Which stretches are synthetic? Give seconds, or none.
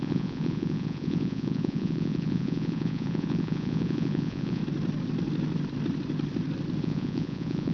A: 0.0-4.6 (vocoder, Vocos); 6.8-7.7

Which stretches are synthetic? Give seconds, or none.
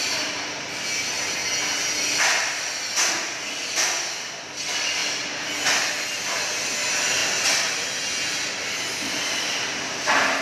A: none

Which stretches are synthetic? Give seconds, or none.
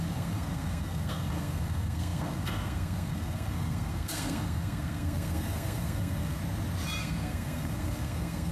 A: 0.0-6.4 (codec, SNAC); 7.0-8.5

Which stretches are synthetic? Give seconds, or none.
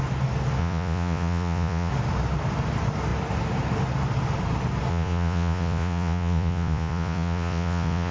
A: 0.6-1.9 (vocoder, Vocos); 4.9-8.1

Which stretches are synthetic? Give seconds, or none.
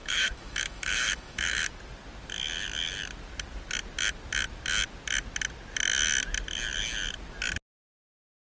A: 0.0-1.7 (autoencoder, DAC-VAE)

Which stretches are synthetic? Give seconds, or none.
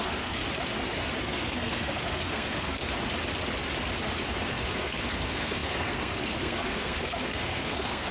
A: 0.0-0.4 (codec, SNAC); 1.2-2.8; 4.5-8.1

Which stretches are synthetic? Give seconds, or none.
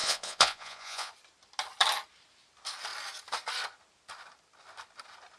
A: 0.0-1.1 (vocoder, Vocos)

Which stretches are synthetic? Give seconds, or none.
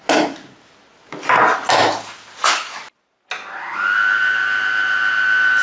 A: none